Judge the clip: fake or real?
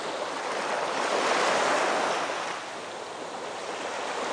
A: real